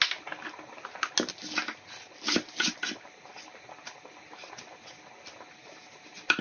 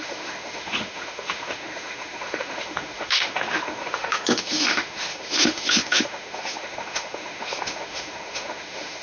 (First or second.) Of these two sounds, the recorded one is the first